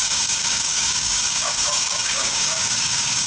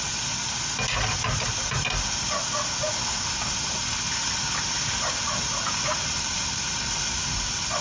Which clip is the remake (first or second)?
first